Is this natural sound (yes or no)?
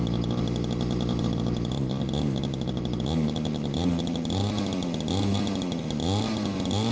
yes